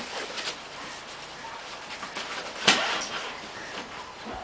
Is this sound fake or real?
real